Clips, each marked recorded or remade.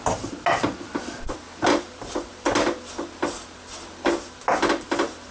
recorded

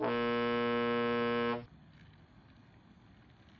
recorded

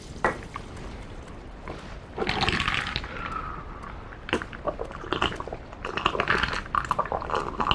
recorded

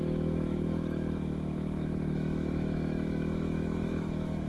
remade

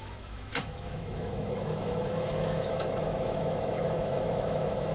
remade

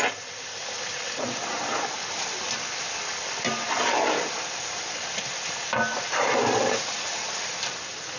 recorded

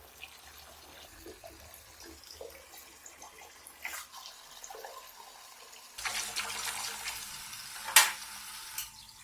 recorded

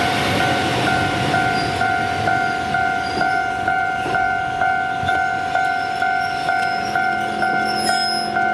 recorded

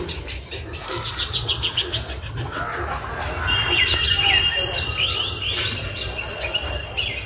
recorded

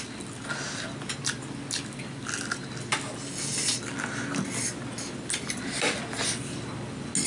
recorded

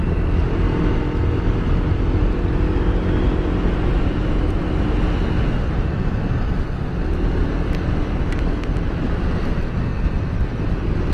recorded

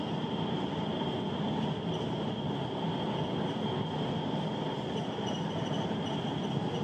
recorded